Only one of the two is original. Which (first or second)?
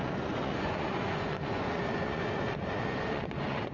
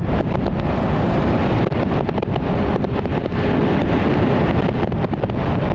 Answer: second